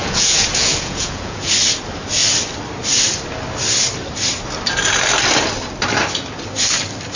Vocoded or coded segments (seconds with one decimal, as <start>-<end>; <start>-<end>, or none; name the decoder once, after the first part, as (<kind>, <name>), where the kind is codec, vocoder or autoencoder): 0.0-1.5 (vocoder, Vocos)